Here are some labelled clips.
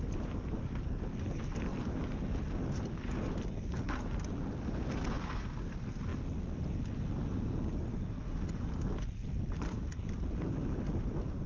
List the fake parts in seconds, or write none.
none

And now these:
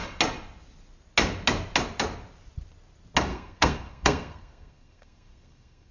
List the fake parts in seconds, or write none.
3.3-5.9 (codec, SNAC)

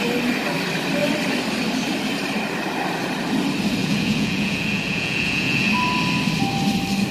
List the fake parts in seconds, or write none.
3.8-5.7 (vocoder, Vocos)

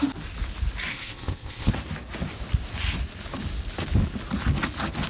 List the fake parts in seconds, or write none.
0.9-1.7 (codec, ZipCodec)

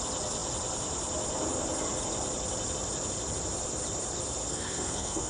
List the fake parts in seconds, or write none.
4.4-5.3 (codec, SNAC)